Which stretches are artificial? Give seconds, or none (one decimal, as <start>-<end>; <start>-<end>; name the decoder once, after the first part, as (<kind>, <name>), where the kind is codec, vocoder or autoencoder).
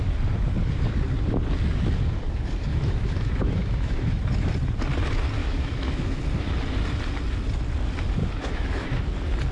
2.7-4.2 (autoencoder, DAC-VAE); 5.4-6.2; 8.2-9.0